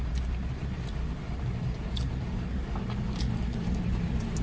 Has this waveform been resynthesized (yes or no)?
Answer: no